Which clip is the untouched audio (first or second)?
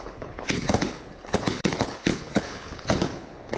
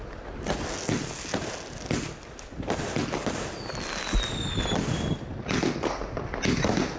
second